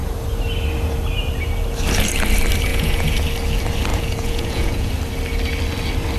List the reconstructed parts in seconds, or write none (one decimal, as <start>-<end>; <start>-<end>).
2.7-3.2; 3.9-4.9